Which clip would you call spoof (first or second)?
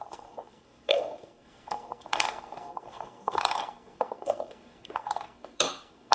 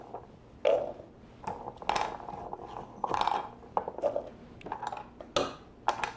first